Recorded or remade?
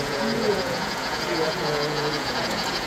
remade